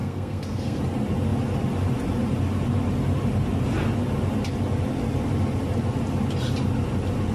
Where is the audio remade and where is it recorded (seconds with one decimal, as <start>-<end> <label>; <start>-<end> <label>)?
0.0-0.8 remade; 0.8-7.3 recorded